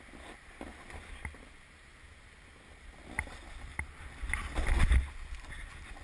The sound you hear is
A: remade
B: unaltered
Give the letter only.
B